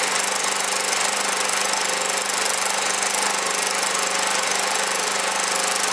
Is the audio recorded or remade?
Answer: recorded